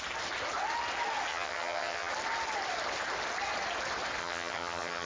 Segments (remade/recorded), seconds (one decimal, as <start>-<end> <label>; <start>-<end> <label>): 0.0-1.3 recorded; 1.3-2.1 remade; 2.1-4.2 recorded; 4.2-5.1 remade